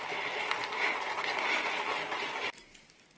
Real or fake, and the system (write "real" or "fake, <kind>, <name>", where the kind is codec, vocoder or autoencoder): real